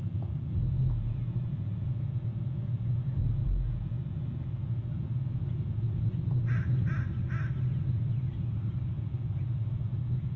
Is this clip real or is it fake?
real